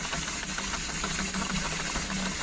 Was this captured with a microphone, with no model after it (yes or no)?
yes